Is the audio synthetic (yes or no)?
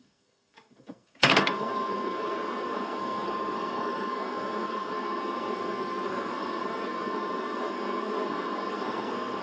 yes